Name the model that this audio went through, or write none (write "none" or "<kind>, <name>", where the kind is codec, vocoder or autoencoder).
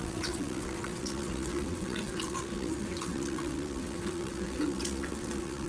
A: vocoder, WaveNeXt